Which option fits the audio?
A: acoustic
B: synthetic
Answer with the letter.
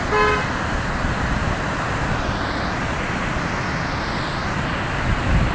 A